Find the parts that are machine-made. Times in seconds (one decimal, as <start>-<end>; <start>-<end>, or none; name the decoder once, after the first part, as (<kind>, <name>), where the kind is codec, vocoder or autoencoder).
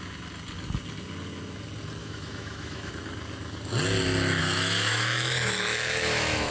2.0-2.9 (autoencoder, DAC-VAE); 4.4-6.5